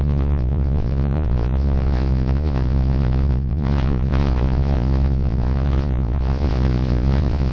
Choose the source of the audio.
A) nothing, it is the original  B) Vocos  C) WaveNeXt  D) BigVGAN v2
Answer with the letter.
B